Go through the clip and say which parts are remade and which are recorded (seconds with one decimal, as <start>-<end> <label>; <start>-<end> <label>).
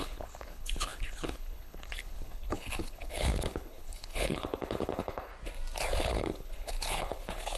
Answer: 0.0-5.3 remade; 5.3-6.0 recorded; 6.0-7.6 remade